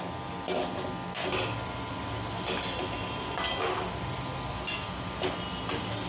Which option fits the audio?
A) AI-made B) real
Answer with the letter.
B